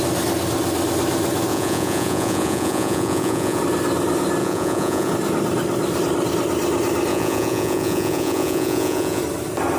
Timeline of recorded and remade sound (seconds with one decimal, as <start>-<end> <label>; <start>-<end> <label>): 0.0-1.5 recorded; 1.5-3.6 remade; 3.6-4.4 recorded; 4.4-5.1 remade; 5.1-7.1 recorded; 7.1-9.2 remade; 9.2-9.8 recorded

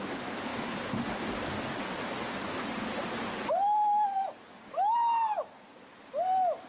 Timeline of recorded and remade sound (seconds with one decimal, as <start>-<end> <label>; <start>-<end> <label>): 0.0-6.7 recorded

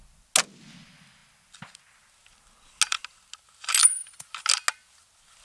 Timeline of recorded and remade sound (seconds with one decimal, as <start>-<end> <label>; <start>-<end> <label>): 0.0-3.8 recorded; 3.8-4.3 remade; 4.3-5.4 recorded

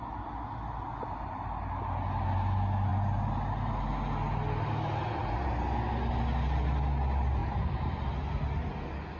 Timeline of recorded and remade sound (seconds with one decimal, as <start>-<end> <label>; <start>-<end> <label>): 0.0-9.2 recorded

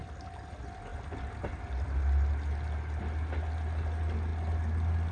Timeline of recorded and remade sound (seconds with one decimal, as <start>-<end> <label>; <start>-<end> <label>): 0.0-5.1 recorded

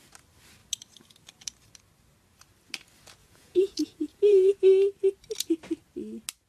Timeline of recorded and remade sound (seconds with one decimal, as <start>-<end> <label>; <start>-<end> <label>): 0.0-3.2 recorded; 3.2-4.5 remade; 4.5-6.5 recorded

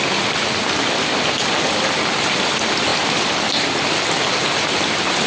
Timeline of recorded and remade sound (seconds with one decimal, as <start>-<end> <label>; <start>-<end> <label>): 0.0-5.3 recorded